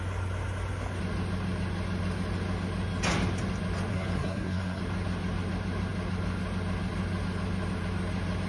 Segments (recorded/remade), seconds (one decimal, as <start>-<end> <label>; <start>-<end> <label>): 0.0-3.9 recorded; 3.9-4.8 remade; 4.8-8.5 recorded